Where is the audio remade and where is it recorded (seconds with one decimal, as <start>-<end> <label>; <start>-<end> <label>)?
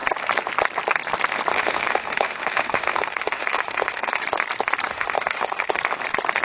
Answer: 0.0-1.5 recorded; 1.5-4.2 remade; 4.2-4.9 recorded; 4.9-5.8 remade; 5.8-6.4 recorded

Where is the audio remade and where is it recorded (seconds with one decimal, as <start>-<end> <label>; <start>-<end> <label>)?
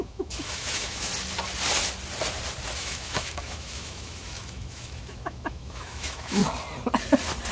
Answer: 0.0-1.1 remade; 1.1-2.8 recorded; 2.8-6.4 remade; 6.4-7.5 recorded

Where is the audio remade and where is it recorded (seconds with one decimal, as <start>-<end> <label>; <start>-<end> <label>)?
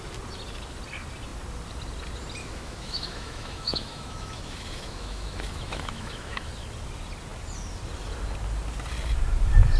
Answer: 0.0-2.4 recorded; 2.4-6.5 remade; 6.5-9.8 recorded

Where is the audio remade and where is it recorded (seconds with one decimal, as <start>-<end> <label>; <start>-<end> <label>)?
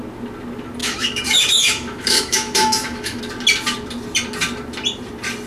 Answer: 0.0-0.8 recorded; 0.8-3.2 remade; 3.2-5.5 recorded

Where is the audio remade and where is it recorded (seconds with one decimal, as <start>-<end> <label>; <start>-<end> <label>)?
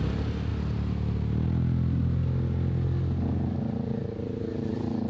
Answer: 0.0-5.1 recorded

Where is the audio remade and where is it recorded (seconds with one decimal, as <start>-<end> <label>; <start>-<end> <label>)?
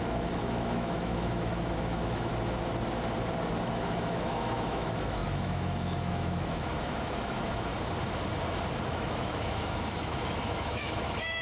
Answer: 0.0-2.3 remade; 2.3-3.6 recorded; 3.6-7.7 remade; 7.7-8.9 recorded; 8.9-11.4 remade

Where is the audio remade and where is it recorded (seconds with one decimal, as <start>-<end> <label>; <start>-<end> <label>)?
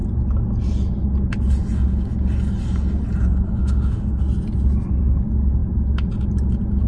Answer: 0.0-3.6 recorded; 3.6-4.2 remade; 4.2-6.9 recorded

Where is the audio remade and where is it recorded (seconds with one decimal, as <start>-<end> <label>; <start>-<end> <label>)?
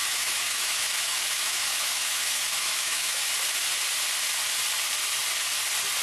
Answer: 0.0-3.3 remade; 3.3-6.0 recorded